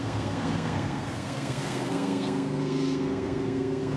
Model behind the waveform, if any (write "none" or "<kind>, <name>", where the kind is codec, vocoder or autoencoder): codec, SNAC